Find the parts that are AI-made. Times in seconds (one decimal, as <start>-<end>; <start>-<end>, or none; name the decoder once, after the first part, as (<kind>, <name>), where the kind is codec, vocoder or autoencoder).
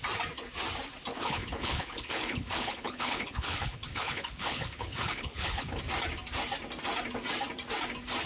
1.1-5.8 (codec, HILCodec)